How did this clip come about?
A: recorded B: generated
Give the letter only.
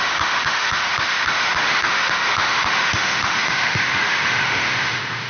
B